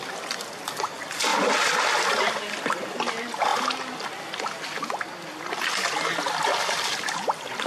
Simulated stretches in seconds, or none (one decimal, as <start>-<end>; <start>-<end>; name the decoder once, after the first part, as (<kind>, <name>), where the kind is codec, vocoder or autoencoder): none